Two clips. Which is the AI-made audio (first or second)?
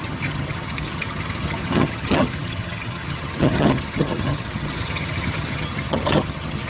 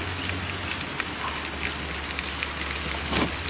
first